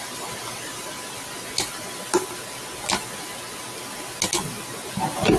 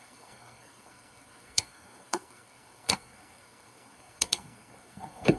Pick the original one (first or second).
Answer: first